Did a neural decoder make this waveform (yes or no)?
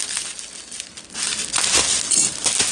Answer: no